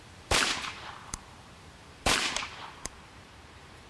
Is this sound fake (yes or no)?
yes